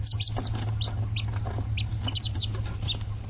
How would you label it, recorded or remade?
recorded